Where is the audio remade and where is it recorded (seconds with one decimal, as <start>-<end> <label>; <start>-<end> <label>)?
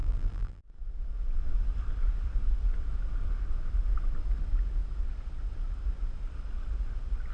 0.0-0.6 remade; 0.6-7.3 recorded